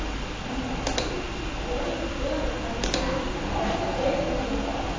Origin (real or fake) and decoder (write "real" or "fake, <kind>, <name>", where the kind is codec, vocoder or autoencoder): real